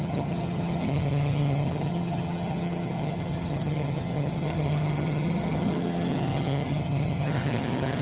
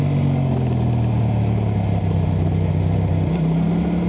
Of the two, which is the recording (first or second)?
second